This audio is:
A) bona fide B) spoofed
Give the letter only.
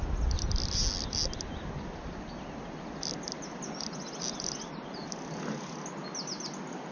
A